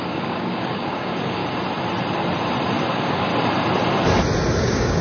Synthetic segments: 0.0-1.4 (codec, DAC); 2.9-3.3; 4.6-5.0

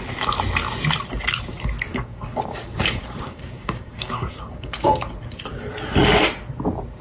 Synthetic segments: 1.9-5.1 (codec, DAC)

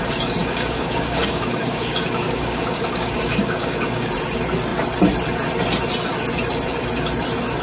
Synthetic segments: 0.4-4.1 (codec, DAC)

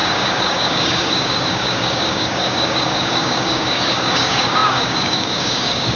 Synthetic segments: 0.0-6.0 (codec, DAC)

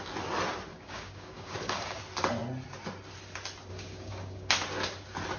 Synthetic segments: 0.7-2.0 (codec, DAC); 3.7-4.5

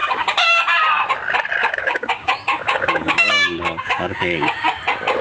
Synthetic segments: 0.0-0.6 (codec, DAC); 1.6-4.7

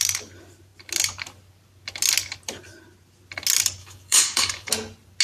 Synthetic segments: 3.8-4.7 (codec, DAC)

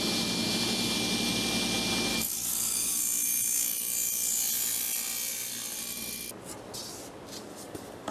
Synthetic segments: 2.1-3.0 (codec, DAC); 7.5-8.1